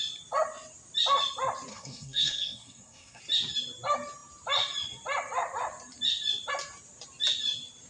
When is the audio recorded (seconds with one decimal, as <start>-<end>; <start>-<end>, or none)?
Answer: 0.0-1.7; 3.2-7.9